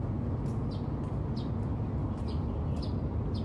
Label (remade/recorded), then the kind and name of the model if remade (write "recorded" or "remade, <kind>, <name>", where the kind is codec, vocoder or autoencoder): recorded